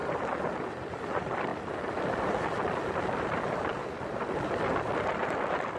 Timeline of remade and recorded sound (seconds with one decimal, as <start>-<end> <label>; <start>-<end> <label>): 0.0-0.7 recorded; 0.7-1.5 remade; 1.5-2.8 recorded; 2.8-5.8 remade

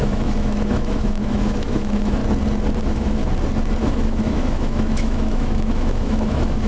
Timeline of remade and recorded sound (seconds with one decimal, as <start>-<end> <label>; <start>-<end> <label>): 0.0-2.2 remade; 2.2-2.8 recorded; 2.8-3.2 remade; 3.2-3.8 recorded; 3.8-6.7 remade

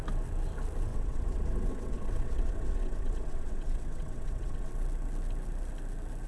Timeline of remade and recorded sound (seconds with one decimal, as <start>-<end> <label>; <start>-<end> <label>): 0.0-0.9 recorded; 0.9-4.7 remade; 4.7-6.3 recorded

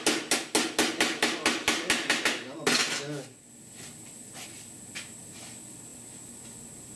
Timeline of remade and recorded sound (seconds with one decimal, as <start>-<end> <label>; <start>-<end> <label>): 0.0-7.0 recorded

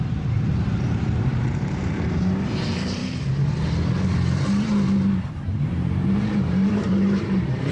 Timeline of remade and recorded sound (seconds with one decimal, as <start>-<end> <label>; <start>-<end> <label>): 0.0-3.0 remade; 3.0-5.6 recorded; 5.6-7.7 remade

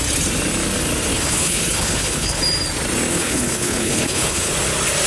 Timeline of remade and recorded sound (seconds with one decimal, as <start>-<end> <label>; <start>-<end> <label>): 0.0-1.1 recorded; 1.1-2.4 remade; 2.4-3.1 recorded; 3.1-4.5 remade; 4.5-5.1 recorded